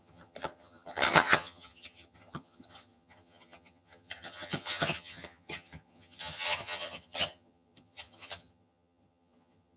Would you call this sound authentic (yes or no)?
no